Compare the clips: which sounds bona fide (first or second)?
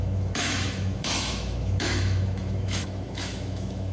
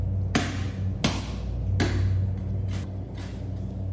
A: second